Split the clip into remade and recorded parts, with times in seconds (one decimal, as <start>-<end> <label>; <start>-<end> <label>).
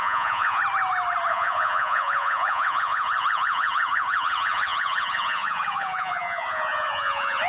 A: 0.0-0.6 remade; 0.6-1.3 recorded; 1.3-7.5 remade